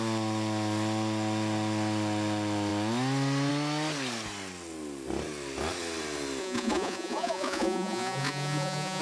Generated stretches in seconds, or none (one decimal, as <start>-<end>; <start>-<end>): 6.4-9.0